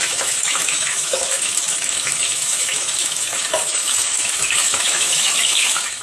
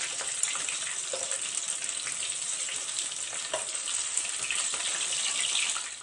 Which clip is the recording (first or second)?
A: second